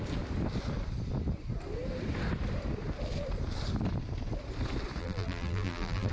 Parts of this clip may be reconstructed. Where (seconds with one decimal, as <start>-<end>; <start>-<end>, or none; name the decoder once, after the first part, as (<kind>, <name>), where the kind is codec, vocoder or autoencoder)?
5.0-6.1 (vocoder, BigVGAN v2)